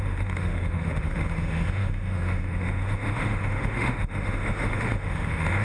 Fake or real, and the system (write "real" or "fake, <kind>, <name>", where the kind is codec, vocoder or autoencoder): fake, autoencoder, DAC-VAE